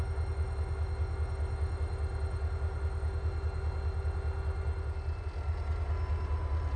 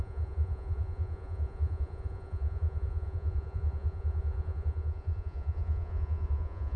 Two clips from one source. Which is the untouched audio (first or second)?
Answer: first